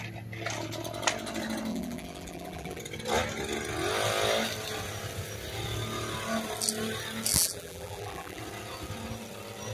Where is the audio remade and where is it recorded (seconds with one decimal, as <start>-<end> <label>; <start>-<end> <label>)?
0.0-1.7 recorded; 1.7-2.8 remade; 2.8-7.3 recorded; 7.3-8.4 remade; 8.4-9.7 recorded